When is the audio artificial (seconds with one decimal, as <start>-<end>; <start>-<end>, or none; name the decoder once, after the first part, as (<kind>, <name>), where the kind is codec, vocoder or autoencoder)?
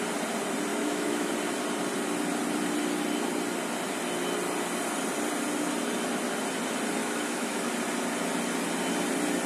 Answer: 0.7-1.3 (autoencoder, DAC-VAE); 7.0-7.6